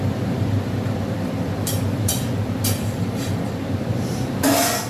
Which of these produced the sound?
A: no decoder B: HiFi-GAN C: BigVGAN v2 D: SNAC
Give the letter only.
C